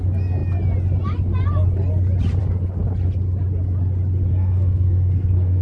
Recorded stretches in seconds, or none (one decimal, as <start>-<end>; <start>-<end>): 0.0-4.3